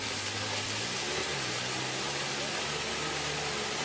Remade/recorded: recorded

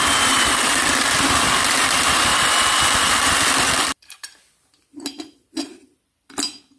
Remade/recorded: remade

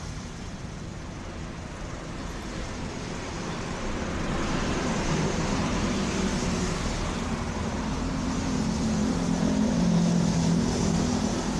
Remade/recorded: remade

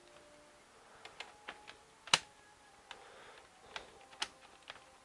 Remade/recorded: recorded